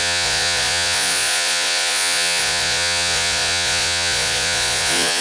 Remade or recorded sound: remade